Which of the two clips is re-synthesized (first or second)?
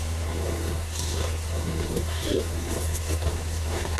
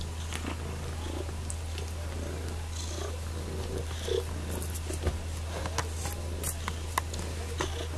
first